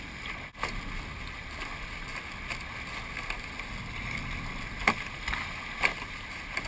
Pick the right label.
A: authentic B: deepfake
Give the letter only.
A